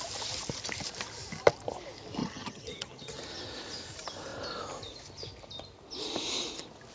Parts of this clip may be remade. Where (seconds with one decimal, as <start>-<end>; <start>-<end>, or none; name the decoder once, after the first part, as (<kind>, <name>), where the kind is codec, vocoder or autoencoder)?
2.2-3.2 (vocoder, HiFi-GAN)